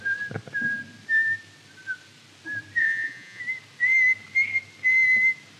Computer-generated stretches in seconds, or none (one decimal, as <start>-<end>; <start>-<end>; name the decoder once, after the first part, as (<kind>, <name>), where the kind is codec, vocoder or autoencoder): 2.8-3.4 (vocoder, Vocos)